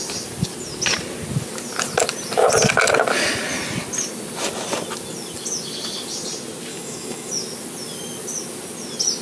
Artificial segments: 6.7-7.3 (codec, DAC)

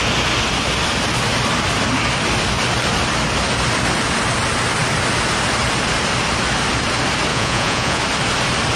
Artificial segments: 7.3-8.0 (vocoder, Vocos)